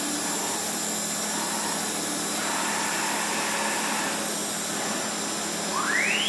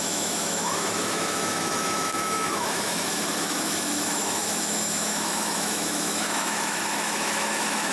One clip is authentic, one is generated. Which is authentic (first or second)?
first